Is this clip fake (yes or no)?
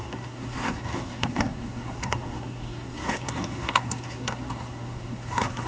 yes